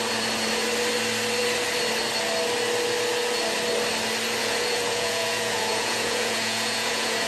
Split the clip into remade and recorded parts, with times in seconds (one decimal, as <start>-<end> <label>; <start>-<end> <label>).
0.0-4.4 recorded; 4.4-7.3 remade